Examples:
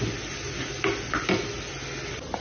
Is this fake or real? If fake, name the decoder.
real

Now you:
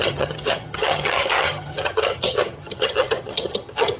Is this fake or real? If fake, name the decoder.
fake, vocoder, HiFi-GAN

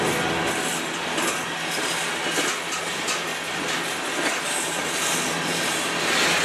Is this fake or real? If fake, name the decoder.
real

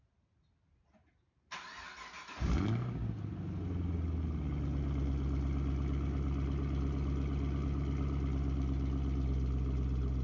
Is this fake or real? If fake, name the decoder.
real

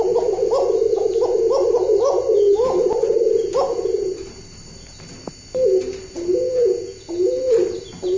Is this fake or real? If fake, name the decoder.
real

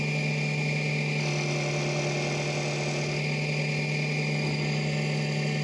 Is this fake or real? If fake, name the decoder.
real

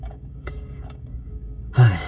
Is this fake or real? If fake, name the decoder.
fake, codec, DAC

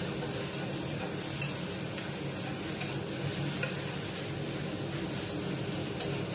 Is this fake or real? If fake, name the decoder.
real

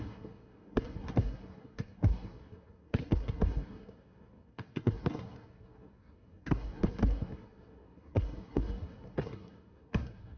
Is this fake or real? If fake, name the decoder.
fake, codec, SNAC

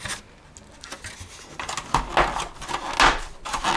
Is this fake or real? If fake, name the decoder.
real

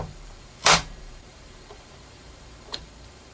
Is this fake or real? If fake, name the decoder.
fake, vocoder, BigVGAN v2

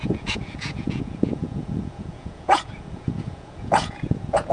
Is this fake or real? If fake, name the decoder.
fake, vocoder, Vocos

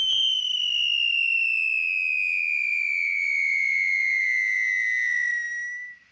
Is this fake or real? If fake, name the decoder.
real